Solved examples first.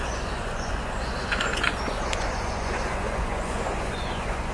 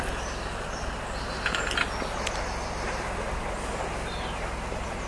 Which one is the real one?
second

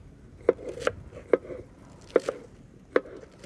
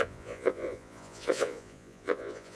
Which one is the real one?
first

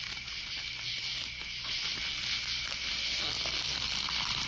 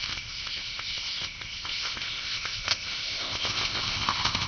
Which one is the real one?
first